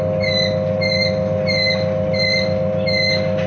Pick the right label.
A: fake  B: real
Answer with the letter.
B